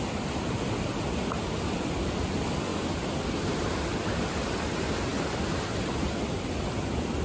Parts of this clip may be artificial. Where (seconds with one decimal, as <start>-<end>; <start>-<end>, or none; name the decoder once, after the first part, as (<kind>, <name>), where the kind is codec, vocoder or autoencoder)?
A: none